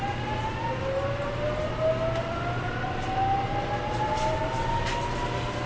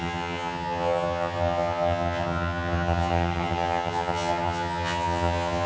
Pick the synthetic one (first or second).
second